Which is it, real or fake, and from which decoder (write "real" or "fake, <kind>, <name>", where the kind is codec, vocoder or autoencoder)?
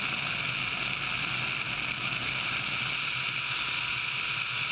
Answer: real